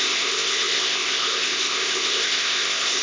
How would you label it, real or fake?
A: fake